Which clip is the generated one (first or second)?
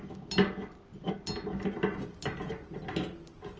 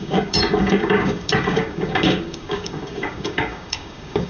second